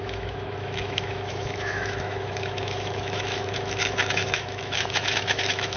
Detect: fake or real fake